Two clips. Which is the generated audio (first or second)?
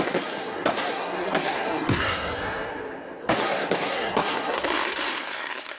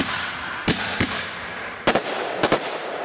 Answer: first